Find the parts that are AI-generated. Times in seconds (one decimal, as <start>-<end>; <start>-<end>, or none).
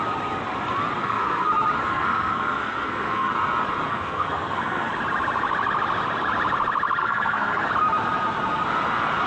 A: 1.0-1.5; 1.9-3.3; 3.9-4.9; 7.0-7.7